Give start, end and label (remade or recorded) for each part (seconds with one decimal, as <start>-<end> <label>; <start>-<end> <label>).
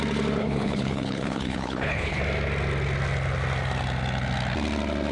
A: 0.0-0.4 recorded; 0.4-2.2 remade; 2.2-5.1 recorded